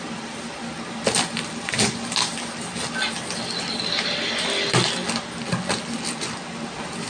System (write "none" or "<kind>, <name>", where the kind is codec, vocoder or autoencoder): none